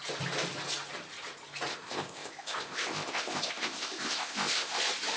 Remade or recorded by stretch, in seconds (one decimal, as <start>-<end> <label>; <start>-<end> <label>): 0.0-1.7 recorded; 1.7-4.8 remade; 4.8-5.2 recorded